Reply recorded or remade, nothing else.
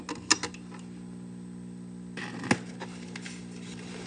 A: recorded